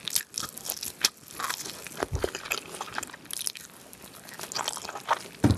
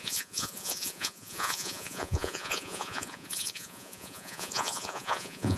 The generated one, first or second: second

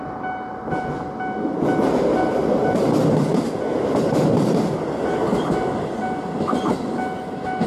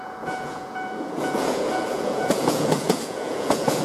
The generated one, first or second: second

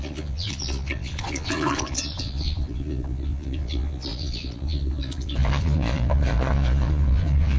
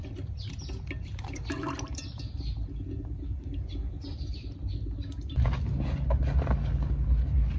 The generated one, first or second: first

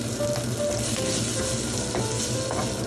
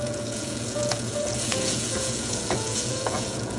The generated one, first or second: second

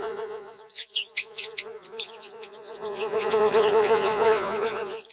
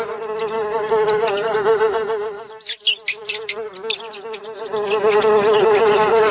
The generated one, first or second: first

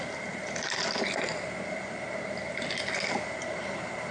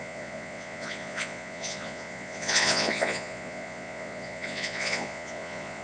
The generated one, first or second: second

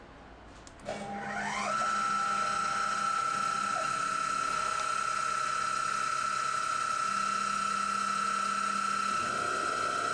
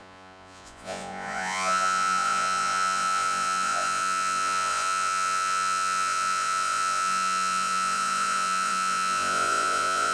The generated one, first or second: second